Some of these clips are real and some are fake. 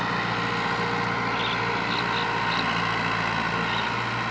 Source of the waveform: real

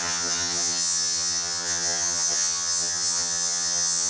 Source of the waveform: fake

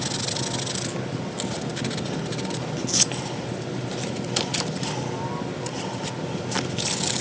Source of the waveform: real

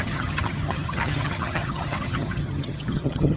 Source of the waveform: fake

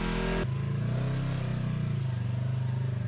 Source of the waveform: real